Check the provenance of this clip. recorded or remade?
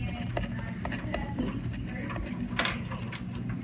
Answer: recorded